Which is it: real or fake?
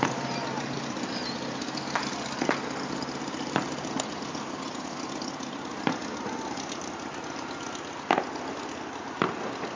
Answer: real